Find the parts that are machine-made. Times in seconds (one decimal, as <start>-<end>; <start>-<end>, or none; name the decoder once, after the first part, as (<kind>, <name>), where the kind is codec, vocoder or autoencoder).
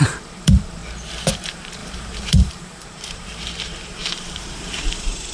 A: 0.0-0.8 (vocoder, BigVGAN v2); 1.3-5.3